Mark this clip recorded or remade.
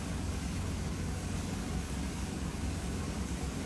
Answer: remade